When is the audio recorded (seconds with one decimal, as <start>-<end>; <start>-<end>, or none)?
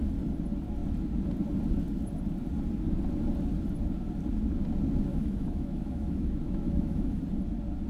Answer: 0.0-5.1; 7.2-7.9